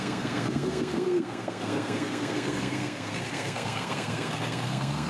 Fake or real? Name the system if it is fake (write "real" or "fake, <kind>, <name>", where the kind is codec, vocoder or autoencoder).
fake, codec, SNAC